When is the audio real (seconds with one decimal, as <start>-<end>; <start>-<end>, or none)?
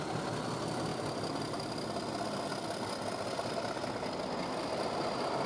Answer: 0.0-5.5